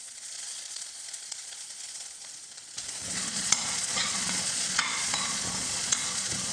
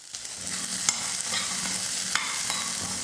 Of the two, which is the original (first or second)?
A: second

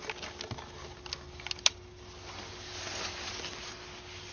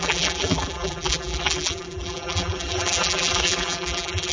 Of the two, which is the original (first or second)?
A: first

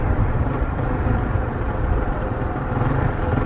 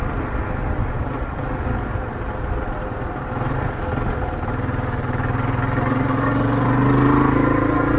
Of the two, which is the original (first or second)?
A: second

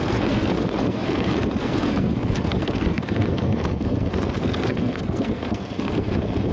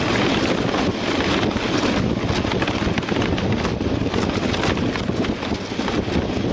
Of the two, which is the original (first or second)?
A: second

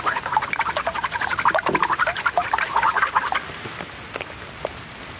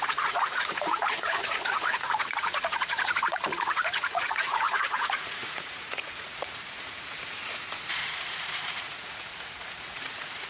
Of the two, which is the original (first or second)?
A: first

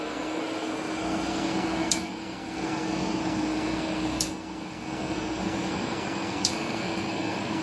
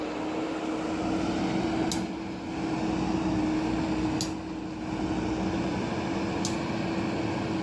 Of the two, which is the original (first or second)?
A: second